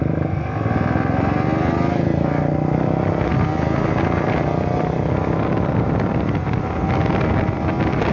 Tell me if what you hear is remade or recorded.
recorded